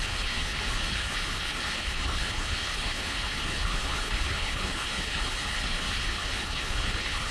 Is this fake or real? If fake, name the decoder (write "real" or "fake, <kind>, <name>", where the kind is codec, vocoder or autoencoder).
fake, codec, HILCodec